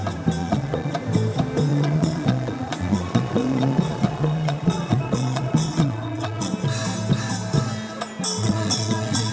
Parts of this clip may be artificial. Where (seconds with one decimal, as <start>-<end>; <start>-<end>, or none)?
0.4-0.9; 1.7-6.5; 8.4-9.3